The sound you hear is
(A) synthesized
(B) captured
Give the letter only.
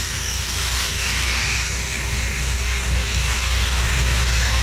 A